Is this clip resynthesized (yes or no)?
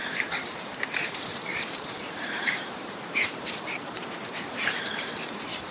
yes